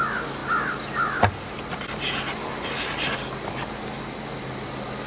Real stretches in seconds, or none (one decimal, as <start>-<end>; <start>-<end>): 0.0-5.1

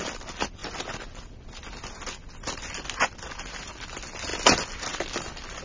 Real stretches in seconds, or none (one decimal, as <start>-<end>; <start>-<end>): 0.0-5.6

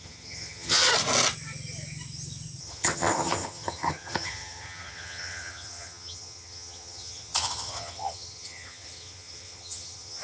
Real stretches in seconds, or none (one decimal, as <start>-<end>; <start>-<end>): 0.9-2.6

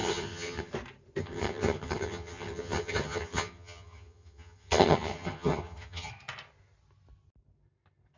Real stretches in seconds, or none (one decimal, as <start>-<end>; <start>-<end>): 0.7-1.2; 6.1-8.2

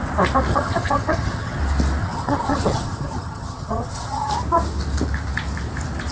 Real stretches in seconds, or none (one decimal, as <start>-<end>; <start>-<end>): 0.0-0.5; 1.6-2.0; 4.3-6.1